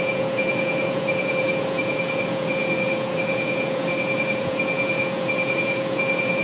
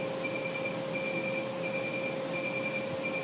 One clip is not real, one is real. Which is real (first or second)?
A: second